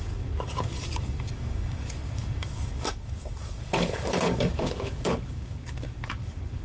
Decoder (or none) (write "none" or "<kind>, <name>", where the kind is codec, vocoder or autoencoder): codec, DAC